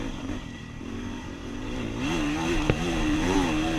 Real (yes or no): no